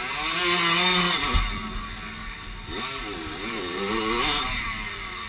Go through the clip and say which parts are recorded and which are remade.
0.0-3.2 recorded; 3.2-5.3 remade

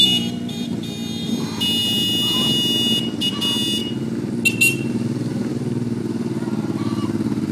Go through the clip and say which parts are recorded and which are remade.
0.0-7.5 recorded

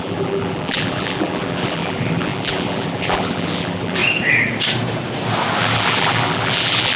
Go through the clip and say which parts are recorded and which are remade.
0.0-4.0 remade; 4.0-5.6 recorded; 5.6-7.0 remade

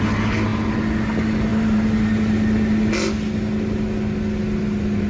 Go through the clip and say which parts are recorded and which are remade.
0.0-5.1 recorded

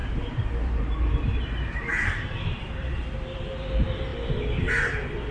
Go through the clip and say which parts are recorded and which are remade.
0.0-2.9 remade; 2.9-5.3 recorded